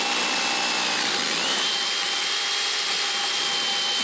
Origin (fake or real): real